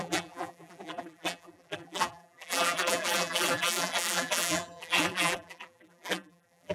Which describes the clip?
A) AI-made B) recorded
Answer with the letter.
A